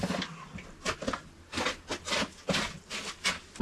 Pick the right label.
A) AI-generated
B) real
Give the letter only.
B